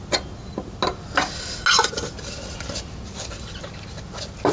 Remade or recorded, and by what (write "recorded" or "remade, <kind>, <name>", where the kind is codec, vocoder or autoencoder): recorded